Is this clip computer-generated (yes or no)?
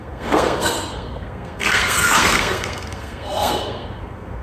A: yes